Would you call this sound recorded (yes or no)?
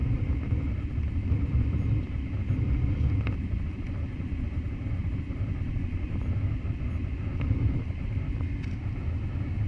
yes